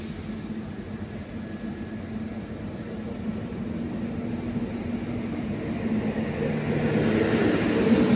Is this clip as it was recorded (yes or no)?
yes